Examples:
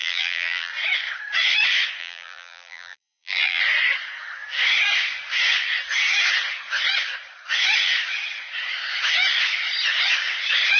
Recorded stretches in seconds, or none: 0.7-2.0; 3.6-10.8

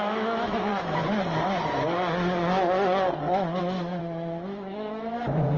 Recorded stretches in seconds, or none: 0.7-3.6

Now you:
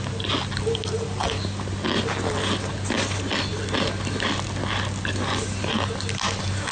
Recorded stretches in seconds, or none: 0.0-6.7

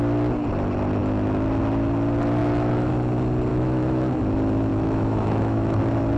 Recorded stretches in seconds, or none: 0.0-2.4; 2.9-3.5; 4.2-4.7; 5.8-6.2

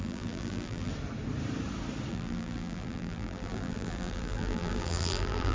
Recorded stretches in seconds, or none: 0.9-2.1

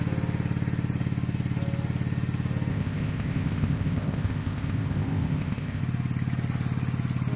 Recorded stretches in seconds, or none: 0.0-2.7; 5.8-7.4